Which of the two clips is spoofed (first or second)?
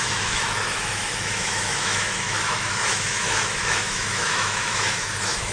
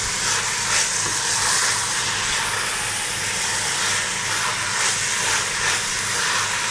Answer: first